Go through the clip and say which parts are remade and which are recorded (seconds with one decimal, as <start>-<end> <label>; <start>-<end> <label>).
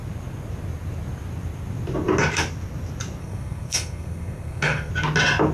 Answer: 0.0-3.2 recorded; 3.2-4.9 remade; 4.9-5.5 recorded